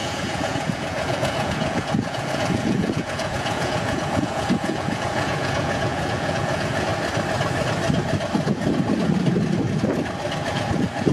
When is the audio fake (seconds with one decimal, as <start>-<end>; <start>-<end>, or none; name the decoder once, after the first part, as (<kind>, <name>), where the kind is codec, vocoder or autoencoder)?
0.0-6.9 (vocoder, Vocos); 10.5-11.1

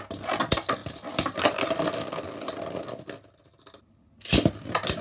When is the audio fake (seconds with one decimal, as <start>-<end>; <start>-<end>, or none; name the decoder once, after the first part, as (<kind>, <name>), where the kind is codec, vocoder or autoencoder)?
none

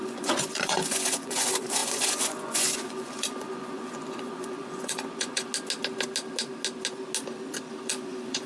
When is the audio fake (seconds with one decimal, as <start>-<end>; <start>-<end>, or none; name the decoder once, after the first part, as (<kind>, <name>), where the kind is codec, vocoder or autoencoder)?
0.0-5.5 (vocoder, Vocos); 7.9-8.5